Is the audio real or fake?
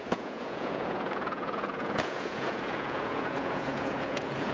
fake